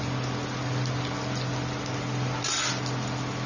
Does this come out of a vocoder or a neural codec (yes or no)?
no